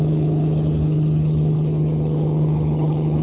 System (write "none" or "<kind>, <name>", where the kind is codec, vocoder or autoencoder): codec, HILCodec